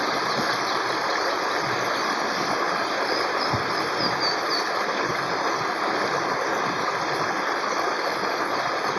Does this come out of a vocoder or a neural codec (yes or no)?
no